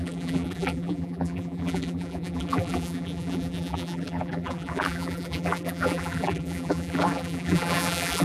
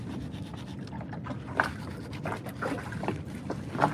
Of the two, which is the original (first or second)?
second